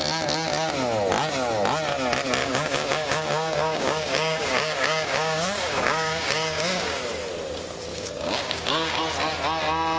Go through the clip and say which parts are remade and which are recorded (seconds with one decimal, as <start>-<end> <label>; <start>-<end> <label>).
0.0-2.4 recorded; 2.4-7.0 remade; 7.0-7.9 recorded; 7.9-9.0 remade; 9.0-10.0 recorded